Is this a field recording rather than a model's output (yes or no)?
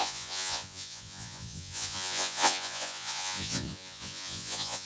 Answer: no